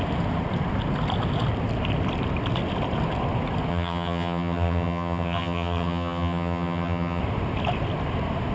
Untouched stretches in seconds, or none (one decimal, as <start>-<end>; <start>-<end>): 0.0-3.7; 7.2-8.5